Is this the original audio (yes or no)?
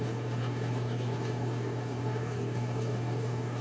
no